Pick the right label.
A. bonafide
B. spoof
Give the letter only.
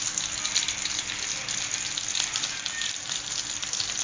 A